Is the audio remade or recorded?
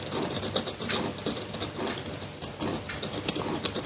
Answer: recorded